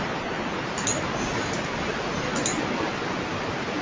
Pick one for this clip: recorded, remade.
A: recorded